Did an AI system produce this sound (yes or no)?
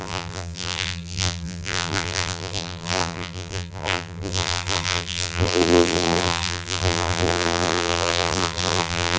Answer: yes